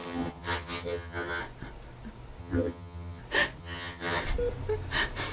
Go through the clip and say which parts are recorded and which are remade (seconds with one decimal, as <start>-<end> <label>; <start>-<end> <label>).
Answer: 0.0-1.4 remade; 1.4-2.4 recorded; 2.4-3.2 remade; 3.2-3.6 recorded; 3.6-4.2 remade; 4.2-5.3 recorded